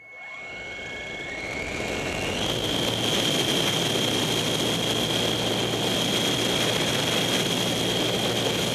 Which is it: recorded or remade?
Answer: recorded